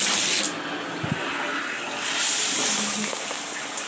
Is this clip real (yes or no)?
yes